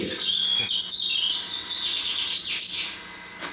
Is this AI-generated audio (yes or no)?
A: no